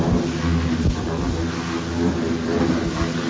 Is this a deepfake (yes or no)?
no